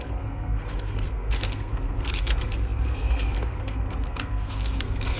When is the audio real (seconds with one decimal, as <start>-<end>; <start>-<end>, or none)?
none